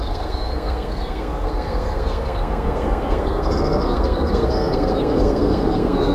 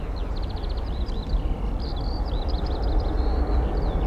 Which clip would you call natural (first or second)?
second